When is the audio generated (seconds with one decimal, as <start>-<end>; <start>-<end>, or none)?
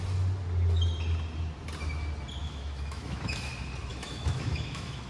2.4-3.5; 3.9-5.1